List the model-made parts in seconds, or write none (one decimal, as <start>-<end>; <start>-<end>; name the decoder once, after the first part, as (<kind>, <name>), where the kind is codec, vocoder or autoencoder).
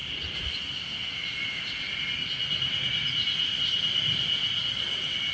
0.0-0.6 (vocoder, BigVGAN v2); 1.4-4.6